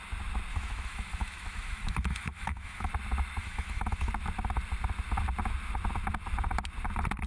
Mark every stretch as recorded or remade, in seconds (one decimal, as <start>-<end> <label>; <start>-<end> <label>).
0.0-0.5 recorded; 0.5-2.9 remade; 2.9-3.4 recorded; 3.4-4.1 remade; 4.1-7.3 recorded